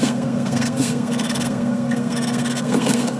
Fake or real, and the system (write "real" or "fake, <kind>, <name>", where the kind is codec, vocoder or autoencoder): fake, codec, SNAC